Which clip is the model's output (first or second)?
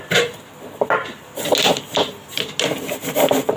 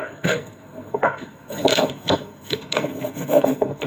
second